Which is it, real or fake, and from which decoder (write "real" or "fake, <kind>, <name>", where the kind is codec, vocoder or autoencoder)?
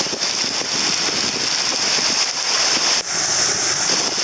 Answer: real